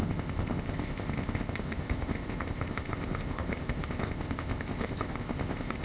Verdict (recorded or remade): remade